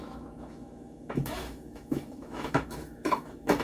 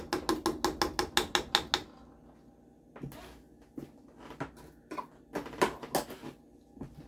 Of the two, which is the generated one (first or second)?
first